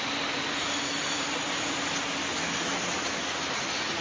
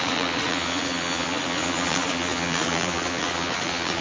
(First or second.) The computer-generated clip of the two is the second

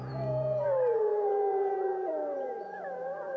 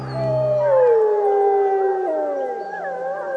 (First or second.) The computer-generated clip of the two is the first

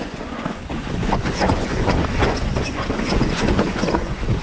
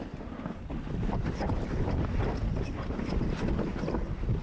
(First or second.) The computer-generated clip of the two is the first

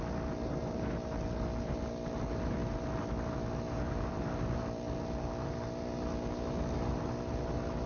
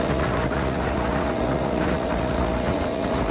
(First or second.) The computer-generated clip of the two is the second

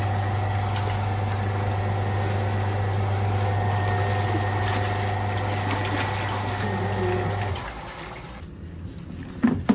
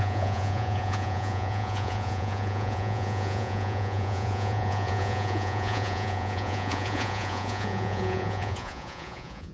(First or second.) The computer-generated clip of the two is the second